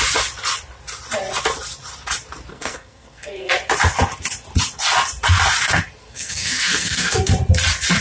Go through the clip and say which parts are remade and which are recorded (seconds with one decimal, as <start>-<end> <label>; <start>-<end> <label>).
0.0-2.5 recorded; 2.5-3.5 remade; 3.5-6.0 recorded; 6.0-7.3 remade; 7.3-8.0 recorded